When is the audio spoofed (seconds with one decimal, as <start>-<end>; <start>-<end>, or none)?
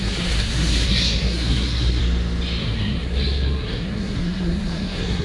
0.0-2.0; 2.6-5.2